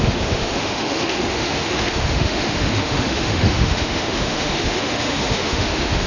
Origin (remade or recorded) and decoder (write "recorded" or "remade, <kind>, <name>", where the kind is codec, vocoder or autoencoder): remade, autoencoder, DAC-VAE